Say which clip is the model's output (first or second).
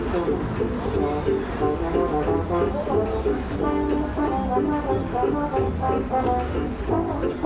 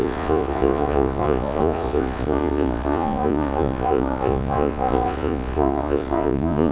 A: second